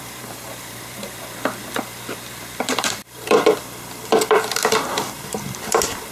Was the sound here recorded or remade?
remade